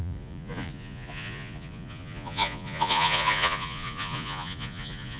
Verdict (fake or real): fake